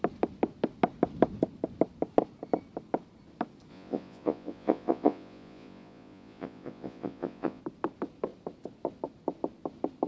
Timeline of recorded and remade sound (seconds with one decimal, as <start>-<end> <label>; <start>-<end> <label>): 0.0-3.7 recorded; 3.7-7.6 remade; 7.6-10.1 recorded